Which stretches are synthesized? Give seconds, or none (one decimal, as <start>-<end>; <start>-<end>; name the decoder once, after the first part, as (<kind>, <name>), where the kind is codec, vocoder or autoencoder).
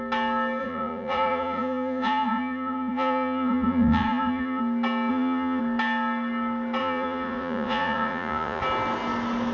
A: 0.6-4.6 (vocoder, Vocos); 5.1-5.6; 6.8-8.6